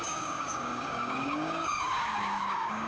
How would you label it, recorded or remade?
remade